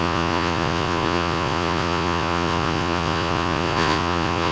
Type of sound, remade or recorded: remade